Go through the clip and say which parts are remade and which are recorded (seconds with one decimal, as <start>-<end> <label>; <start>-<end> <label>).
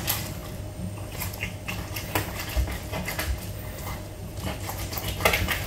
0.0-4.2 recorded; 4.2-5.0 remade; 5.0-5.7 recorded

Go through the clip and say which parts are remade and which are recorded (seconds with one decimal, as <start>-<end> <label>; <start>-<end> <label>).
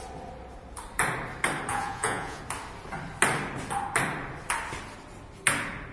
0.0-1.7 recorded; 1.7-2.4 remade; 2.4-5.9 recorded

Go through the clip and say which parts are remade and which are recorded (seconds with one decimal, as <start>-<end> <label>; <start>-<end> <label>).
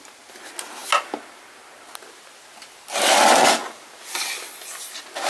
0.0-5.3 recorded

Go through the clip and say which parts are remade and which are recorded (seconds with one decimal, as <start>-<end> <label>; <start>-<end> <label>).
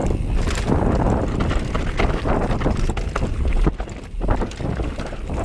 0.0-5.4 recorded